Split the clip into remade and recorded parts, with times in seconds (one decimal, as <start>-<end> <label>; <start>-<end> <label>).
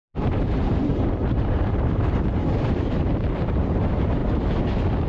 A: 0.0-4.2 remade; 4.2-5.1 recorded